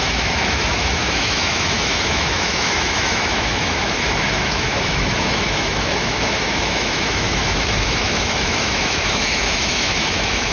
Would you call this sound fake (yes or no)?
yes